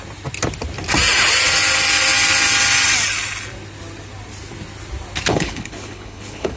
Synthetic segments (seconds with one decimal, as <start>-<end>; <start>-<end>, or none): 5.3-6.6